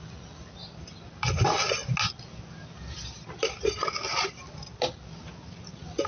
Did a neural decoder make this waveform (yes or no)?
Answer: no